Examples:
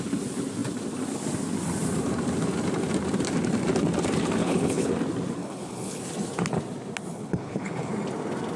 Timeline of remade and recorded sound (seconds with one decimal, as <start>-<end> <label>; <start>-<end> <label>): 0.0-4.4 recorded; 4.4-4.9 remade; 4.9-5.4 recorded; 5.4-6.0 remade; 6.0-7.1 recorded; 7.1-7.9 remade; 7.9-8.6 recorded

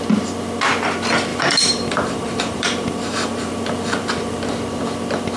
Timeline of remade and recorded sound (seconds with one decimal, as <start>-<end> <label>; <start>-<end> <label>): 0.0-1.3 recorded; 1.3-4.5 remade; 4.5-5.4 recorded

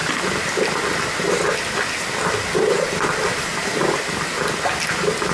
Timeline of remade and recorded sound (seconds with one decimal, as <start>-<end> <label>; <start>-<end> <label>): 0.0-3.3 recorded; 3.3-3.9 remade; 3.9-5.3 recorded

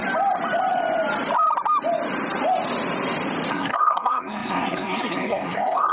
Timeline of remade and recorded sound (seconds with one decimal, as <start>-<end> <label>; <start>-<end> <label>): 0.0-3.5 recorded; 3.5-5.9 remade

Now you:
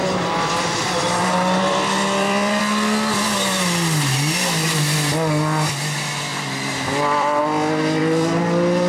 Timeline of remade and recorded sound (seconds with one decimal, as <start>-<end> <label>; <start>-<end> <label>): 0.0-2.6 remade; 2.6-6.3 recorded; 6.3-7.4 remade; 7.4-8.0 recorded; 8.0-8.9 remade

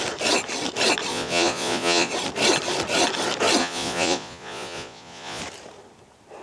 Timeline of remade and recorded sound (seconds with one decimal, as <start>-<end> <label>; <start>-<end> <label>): 0.0-1.1 recorded; 1.1-2.1 remade; 2.1-3.6 recorded; 3.6-5.4 remade; 5.4-6.4 recorded

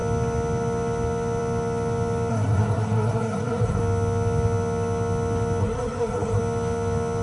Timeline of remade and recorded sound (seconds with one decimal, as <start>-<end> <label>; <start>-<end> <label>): 0.0-2.3 recorded; 2.3-3.8 remade; 3.8-5.6 recorded; 5.6-6.4 remade; 6.4-7.2 recorded